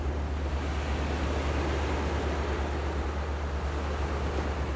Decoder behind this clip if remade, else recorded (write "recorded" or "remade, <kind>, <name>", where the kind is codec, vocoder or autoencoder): recorded